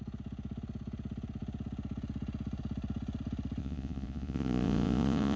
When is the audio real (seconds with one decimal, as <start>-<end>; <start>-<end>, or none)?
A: 0.0-3.6